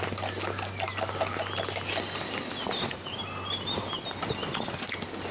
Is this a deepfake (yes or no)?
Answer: no